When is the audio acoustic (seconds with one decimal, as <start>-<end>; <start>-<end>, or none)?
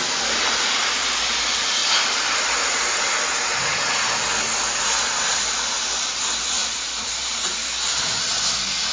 0.0-7.6; 8.2-8.9